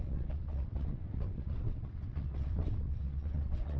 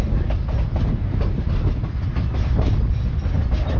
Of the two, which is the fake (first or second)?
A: first